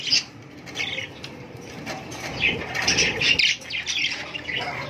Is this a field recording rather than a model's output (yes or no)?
yes